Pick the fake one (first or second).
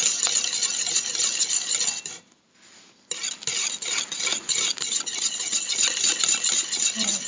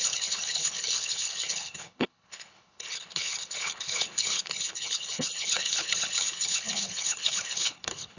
second